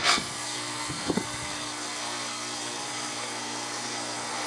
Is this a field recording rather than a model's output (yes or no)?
no